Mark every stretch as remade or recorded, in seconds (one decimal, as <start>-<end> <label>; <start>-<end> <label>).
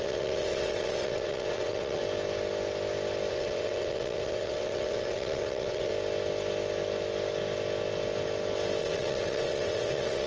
0.0-2.0 remade; 2.0-3.3 recorded; 3.3-5.9 remade; 5.9-8.8 recorded; 8.8-10.3 remade